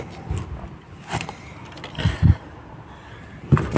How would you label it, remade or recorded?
recorded